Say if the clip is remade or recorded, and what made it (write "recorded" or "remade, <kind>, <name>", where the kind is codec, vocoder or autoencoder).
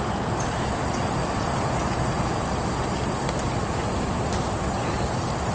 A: recorded